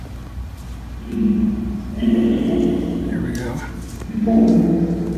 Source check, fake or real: real